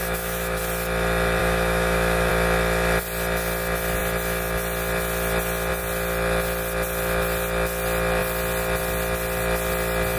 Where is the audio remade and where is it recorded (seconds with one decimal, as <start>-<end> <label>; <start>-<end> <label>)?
0.0-0.6 remade; 0.6-1.4 recorded; 1.4-2.3 remade; 2.3-10.2 recorded